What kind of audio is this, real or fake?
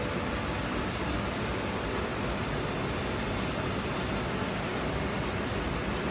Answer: real